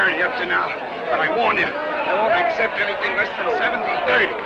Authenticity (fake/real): real